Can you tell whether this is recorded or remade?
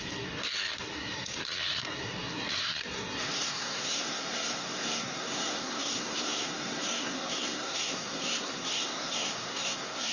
remade